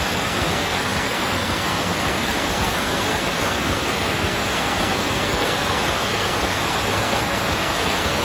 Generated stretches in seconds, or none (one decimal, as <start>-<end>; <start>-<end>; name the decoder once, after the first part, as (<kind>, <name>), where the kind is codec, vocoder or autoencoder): 0.0-8.2 (codec, SNAC)